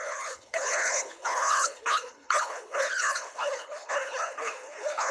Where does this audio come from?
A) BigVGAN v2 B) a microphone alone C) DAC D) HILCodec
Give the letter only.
D